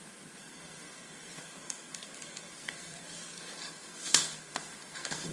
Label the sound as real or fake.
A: fake